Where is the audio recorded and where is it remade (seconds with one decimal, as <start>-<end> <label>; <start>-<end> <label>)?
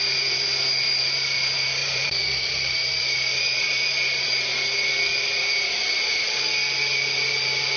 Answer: 0.0-1.8 recorded; 1.8-4.4 remade; 4.4-5.5 recorded; 5.5-6.4 remade; 6.4-7.8 recorded